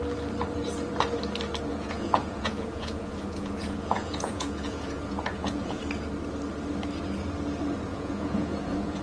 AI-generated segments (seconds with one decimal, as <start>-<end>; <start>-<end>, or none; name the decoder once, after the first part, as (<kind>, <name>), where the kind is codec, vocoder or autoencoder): 1.7-5.8 (vocoder, Vocos); 7.9-9.0